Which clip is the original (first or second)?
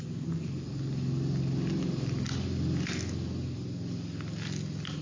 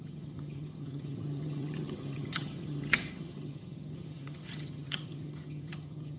first